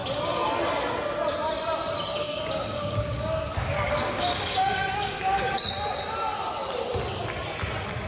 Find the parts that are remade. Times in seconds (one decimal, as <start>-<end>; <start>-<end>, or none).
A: 2.1-5.7